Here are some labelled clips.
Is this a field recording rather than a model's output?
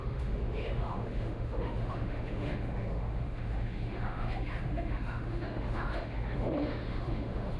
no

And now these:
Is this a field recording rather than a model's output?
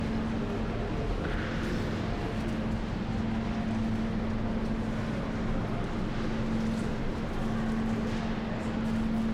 yes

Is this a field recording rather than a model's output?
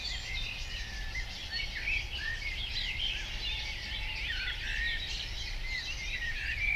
yes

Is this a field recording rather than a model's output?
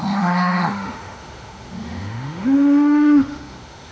no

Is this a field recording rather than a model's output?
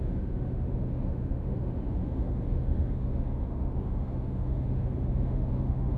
no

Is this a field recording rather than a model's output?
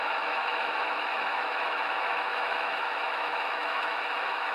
no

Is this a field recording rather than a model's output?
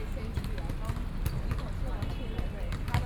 yes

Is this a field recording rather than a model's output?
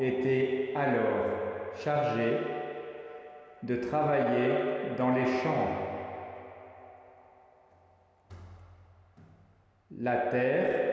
yes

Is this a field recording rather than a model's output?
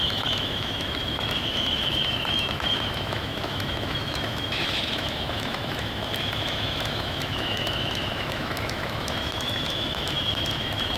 no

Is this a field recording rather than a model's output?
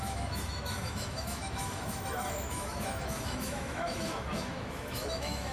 no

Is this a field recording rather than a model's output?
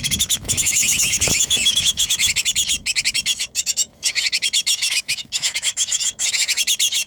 no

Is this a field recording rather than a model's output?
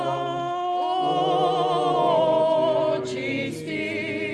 yes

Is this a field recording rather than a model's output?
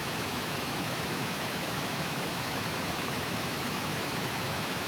no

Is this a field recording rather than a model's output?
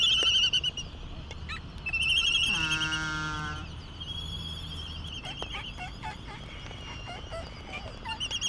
yes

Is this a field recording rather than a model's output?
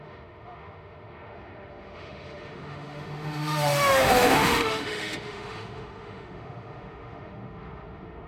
no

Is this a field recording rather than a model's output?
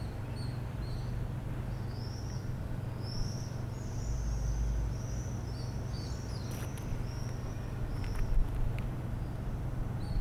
yes